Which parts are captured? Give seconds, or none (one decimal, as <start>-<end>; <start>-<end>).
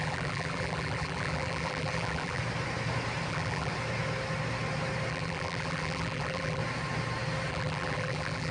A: 2.4-3.3; 3.7-5.1; 6.6-7.5